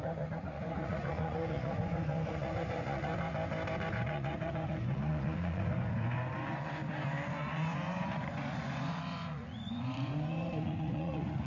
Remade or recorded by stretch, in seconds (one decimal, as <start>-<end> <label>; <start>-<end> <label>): 0.0-3.1 remade; 3.1-3.9 recorded; 3.9-6.8 remade; 6.8-7.3 recorded; 7.3-11.5 remade

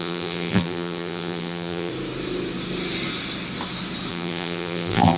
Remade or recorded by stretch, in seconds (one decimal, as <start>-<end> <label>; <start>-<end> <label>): 0.0-1.9 remade; 1.9-4.1 recorded; 4.1-5.2 remade

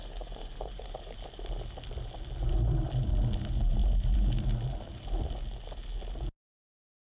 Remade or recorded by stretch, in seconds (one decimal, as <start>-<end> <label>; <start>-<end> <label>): 0.0-1.5 remade; 1.5-3.8 recorded; 3.8-4.3 remade; 4.3-7.0 recorded

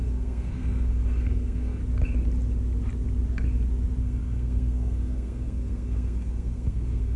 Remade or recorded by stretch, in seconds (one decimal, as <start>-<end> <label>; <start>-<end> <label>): 0.0-1.8 remade; 1.8-4.0 recorded; 4.0-7.2 remade

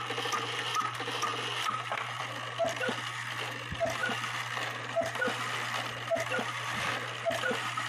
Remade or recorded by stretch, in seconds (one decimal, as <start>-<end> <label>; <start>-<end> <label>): 0.0-4.0 recorded; 4.0-7.9 remade